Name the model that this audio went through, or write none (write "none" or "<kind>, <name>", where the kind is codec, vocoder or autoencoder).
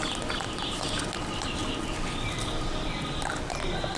none